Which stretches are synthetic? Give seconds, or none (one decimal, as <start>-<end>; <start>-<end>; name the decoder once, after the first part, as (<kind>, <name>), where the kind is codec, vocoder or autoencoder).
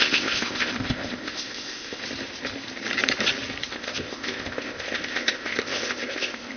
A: 0.0-2.0 (codec, ZipCodec); 3.7-6.6